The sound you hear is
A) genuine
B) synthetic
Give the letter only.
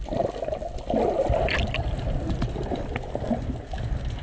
A